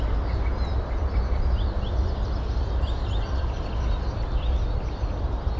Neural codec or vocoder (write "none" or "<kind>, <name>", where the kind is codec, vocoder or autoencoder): none